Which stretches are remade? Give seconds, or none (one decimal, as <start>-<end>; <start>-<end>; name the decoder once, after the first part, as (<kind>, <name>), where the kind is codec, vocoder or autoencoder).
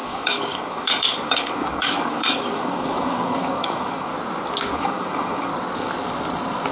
0.0-4.1 (codec, DAC); 4.7-5.5